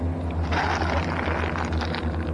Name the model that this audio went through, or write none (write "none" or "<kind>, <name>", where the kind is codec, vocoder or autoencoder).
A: none